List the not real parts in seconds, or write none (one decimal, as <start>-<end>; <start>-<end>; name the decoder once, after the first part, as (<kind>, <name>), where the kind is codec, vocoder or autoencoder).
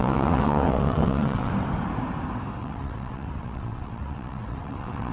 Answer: 0.0-1.5 (vocoder, WaveNeXt); 2.6-5.1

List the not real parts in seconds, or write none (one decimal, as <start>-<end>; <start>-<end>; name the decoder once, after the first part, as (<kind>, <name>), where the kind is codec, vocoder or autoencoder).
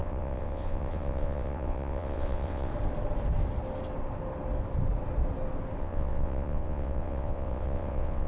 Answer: 0.0-2.7 (vocoder, WaveNeXt); 5.8-8.3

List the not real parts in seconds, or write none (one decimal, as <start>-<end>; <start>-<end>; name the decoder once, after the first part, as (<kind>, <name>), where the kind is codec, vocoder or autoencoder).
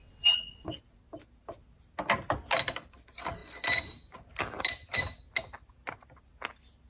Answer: 0.0-0.8 (vocoder, WaveNeXt)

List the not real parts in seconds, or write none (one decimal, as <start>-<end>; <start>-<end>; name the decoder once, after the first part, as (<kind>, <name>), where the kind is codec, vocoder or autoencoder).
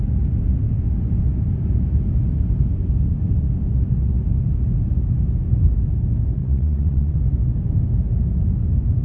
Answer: 6.4-7.2 (vocoder, WaveNeXt)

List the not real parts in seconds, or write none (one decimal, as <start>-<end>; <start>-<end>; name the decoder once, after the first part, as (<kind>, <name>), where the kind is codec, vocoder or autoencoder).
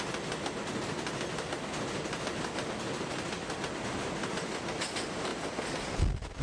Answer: none